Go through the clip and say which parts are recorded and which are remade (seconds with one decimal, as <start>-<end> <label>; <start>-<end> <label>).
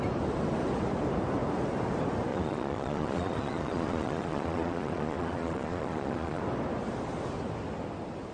0.0-2.3 recorded; 2.3-6.4 remade; 6.4-8.3 recorded